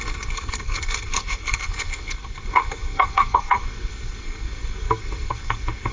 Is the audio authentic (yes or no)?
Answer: no